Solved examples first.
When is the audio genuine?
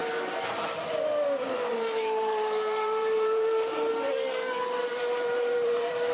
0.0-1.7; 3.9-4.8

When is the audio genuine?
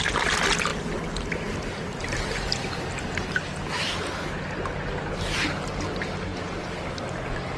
0.0-7.6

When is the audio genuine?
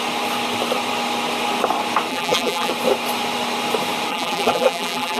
0.0-2.1; 2.7-4.1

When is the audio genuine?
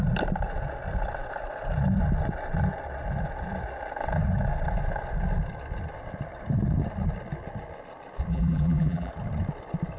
0.0-8.3; 9.1-10.0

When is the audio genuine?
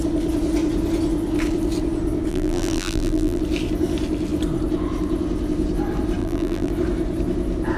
0.0-2.3; 3.4-6.2; 6.7-7.8